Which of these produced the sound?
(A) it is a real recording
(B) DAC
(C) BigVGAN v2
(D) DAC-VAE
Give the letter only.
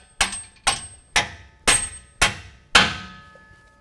A